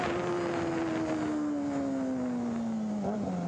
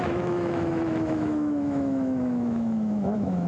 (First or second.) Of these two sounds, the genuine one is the first